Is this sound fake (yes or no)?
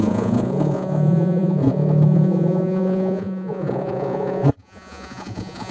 yes